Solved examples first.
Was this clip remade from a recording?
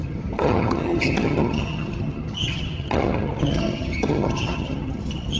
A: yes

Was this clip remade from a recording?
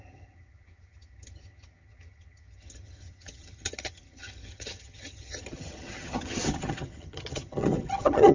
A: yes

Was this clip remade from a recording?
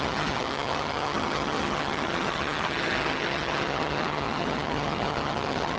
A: yes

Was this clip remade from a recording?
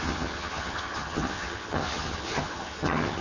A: yes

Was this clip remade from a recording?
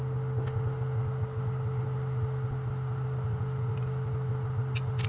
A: no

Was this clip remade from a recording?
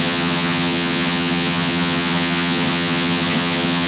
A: yes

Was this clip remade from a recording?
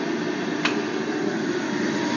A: no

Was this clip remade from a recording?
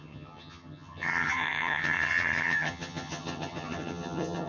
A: yes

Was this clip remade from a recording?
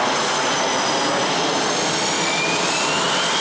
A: no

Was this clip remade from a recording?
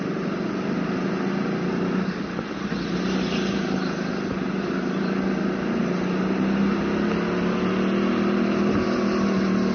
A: no